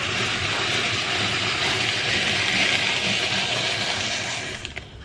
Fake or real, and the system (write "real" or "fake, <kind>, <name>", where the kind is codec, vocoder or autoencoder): real